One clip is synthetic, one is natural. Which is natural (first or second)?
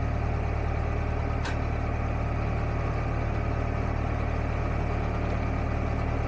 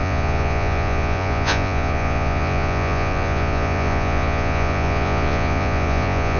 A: first